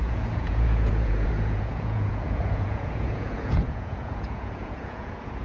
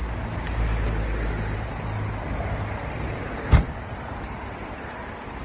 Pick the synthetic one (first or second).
first